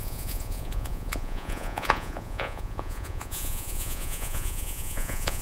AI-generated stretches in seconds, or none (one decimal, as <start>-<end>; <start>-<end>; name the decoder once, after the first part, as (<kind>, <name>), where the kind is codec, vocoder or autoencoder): 0.0-5.4 (vocoder, Vocos)